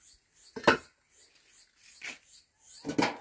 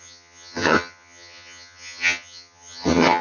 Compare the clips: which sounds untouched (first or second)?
first